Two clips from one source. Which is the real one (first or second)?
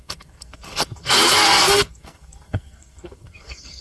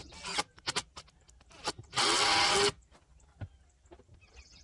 second